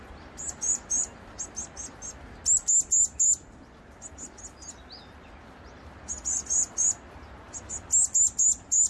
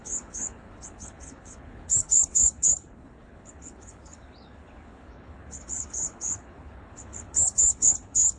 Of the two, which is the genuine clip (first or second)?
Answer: first